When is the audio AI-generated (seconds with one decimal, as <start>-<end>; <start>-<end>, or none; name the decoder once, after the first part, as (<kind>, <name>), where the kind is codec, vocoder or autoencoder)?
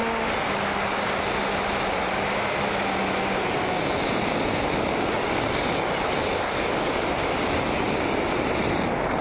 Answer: none